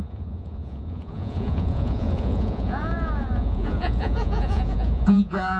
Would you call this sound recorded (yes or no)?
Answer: no